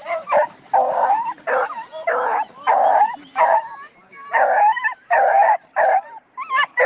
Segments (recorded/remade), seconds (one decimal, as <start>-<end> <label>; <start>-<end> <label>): 0.0-6.9 remade